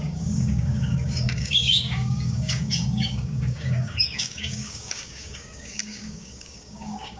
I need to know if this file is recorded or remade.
remade